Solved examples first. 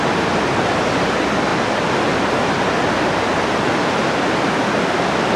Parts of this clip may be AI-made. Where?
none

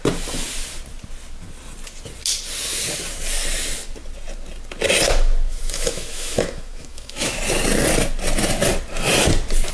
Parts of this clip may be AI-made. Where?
5.5-7.4